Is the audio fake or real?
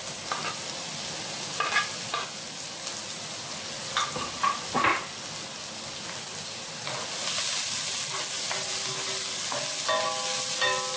real